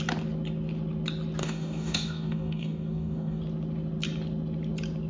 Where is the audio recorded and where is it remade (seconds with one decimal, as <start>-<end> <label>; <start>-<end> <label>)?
0.0-1.4 recorded; 1.4-3.4 remade; 3.4-5.1 recorded